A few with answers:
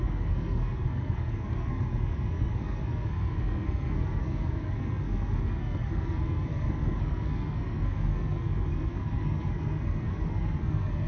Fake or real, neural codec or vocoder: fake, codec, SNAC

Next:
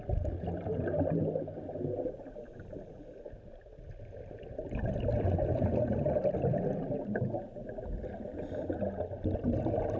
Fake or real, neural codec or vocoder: real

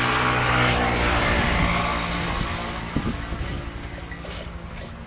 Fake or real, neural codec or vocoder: real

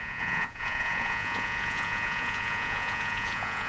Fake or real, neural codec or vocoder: fake, vocoder, Vocos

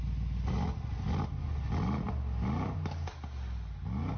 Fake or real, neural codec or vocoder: real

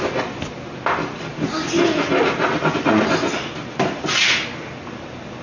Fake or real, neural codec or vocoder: real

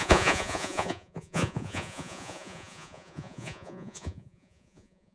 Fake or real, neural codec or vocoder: fake, vocoder, Vocos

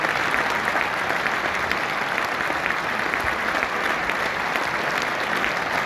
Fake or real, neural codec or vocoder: real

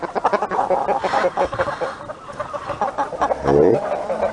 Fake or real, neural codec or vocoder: real